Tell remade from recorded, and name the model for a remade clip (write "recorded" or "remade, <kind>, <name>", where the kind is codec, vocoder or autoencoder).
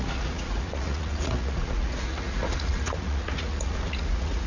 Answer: remade, vocoder, Vocos